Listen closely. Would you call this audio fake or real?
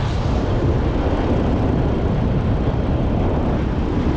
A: real